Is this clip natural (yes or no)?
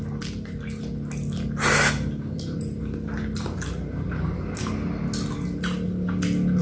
yes